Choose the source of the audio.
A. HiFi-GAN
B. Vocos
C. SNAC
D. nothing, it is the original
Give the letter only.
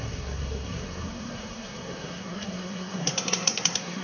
C